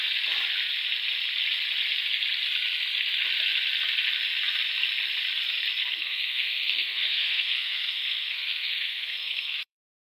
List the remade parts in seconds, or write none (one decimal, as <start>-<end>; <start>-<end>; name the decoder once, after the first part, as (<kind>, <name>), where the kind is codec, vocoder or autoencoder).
5.8-10.1 (codec, SNAC)